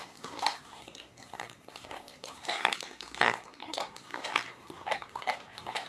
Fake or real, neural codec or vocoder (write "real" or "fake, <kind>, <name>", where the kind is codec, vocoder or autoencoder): fake, codec, SNAC